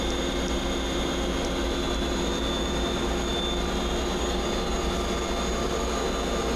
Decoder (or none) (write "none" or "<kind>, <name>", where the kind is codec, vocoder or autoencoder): none